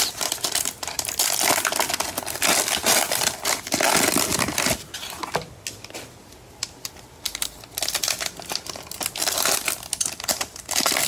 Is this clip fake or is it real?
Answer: real